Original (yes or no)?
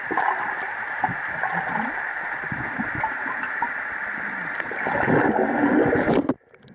yes